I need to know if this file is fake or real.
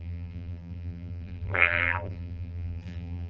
fake